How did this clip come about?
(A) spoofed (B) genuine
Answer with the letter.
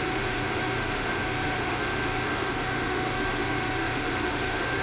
A